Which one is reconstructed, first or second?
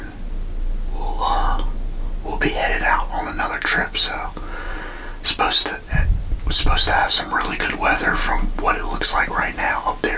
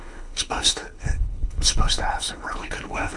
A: second